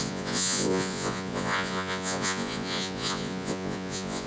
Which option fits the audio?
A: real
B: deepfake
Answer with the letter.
B